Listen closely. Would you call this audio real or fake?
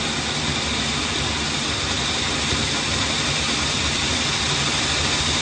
real